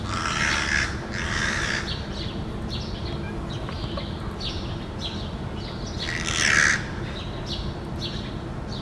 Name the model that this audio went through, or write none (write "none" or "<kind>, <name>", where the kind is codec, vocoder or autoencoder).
none